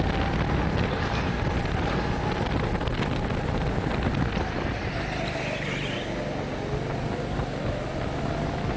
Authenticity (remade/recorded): recorded